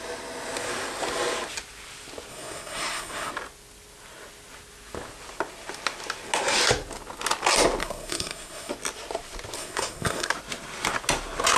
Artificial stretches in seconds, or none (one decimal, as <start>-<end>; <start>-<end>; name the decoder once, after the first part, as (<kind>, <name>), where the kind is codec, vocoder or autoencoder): 2.3-3.3 (codec, SNAC); 7.8-8.7; 9.6-10.3